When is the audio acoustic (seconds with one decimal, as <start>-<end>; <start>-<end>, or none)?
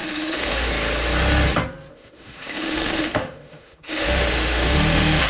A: 0.7-1.9